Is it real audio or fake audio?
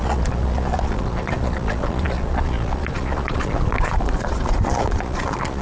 fake